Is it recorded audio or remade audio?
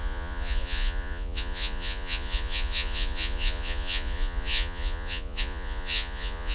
remade